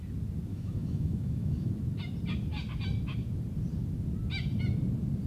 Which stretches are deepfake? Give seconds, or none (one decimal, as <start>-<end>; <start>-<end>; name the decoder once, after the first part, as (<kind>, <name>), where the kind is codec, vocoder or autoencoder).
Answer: 0.5-1.7 (autoencoder, DAC-VAE)